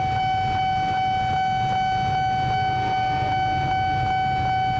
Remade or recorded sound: recorded